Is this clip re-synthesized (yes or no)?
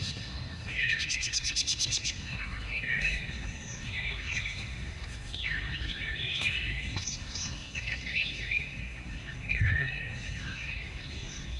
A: yes